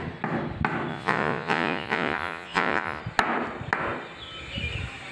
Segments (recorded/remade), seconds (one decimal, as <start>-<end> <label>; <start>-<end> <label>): 0.0-0.9 recorded; 0.9-3.0 remade; 3.0-5.1 recorded